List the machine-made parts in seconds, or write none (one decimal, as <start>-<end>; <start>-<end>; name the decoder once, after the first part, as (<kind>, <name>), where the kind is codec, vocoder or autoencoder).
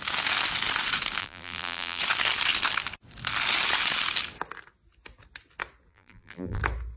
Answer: 1.2-2.0 (vocoder, BigVGAN v2); 5.9-6.6